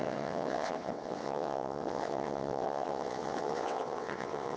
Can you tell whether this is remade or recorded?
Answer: remade